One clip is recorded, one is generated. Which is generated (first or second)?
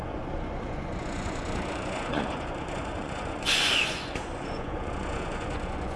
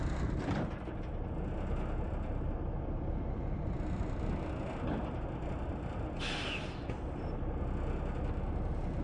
first